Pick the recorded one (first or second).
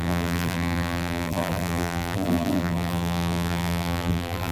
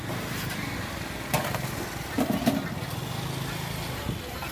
second